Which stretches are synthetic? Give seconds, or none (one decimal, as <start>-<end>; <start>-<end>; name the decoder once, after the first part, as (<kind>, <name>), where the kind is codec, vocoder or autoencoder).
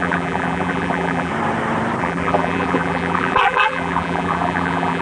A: 0.0-1.3 (vocoder, BigVGAN v2); 2.0-5.0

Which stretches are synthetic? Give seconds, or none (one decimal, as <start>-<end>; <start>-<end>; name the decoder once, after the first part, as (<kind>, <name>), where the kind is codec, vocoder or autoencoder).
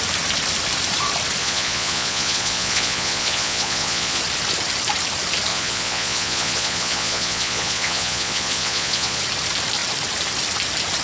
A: 1.4-4.2 (vocoder, Vocos); 5.5-9.2